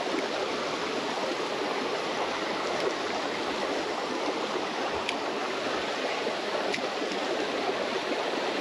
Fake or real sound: real